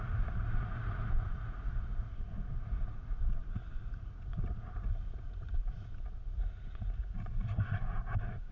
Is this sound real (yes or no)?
no